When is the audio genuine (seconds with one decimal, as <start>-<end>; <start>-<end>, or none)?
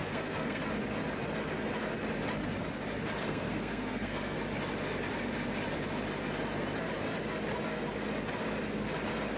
0.6-3.2; 4.4-9.4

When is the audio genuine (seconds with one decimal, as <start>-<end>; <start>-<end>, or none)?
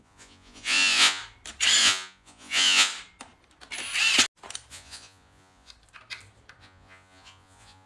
1.2-1.8; 2.9-4.7; 5.7-6.6